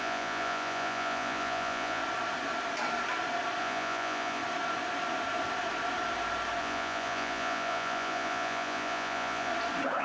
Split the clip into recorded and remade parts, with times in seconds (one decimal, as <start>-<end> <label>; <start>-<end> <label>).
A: 0.0-2.0 remade; 2.0-3.6 recorded; 3.6-4.4 remade; 4.4-6.6 recorded; 6.6-9.5 remade; 9.5-10.0 recorded